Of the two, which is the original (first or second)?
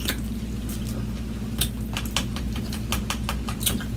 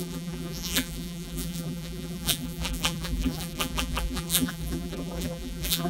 first